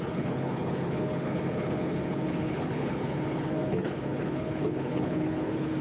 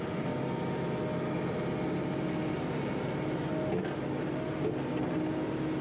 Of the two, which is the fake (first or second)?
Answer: first